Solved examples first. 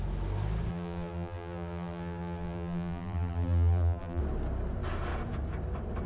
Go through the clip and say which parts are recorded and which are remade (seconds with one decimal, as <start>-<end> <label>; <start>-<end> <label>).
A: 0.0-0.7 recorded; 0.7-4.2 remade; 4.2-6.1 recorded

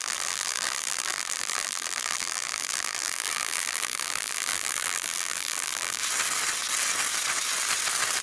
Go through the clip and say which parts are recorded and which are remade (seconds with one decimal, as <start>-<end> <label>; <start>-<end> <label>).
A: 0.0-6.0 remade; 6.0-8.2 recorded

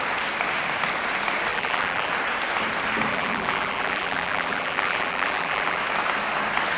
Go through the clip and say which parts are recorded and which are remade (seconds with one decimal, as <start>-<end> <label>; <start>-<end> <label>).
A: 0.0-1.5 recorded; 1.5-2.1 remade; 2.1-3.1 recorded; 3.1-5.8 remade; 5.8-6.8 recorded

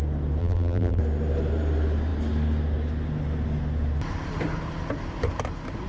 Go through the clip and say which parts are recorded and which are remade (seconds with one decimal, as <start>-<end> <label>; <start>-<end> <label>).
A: 0.0-0.4 recorded; 0.4-1.0 remade; 1.0-5.9 recorded

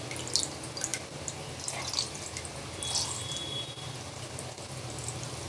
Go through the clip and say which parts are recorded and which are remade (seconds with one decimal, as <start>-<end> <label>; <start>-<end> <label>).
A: 0.0-5.5 recorded

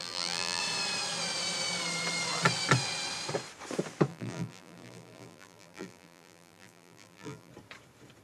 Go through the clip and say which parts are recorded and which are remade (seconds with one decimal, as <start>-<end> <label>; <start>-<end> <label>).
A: 0.0-0.6 remade; 0.6-4.1 recorded; 4.1-7.5 remade; 7.5-8.2 recorded

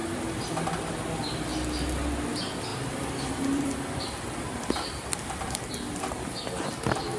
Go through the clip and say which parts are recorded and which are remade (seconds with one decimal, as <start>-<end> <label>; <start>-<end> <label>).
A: 0.0-0.7 remade; 0.7-2.7 recorded; 2.7-6.0 remade; 6.0-7.2 recorded